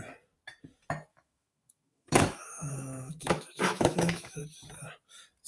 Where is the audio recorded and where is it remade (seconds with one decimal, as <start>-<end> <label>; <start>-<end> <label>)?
0.0-1.1 recorded; 1.1-4.4 remade; 4.4-5.5 recorded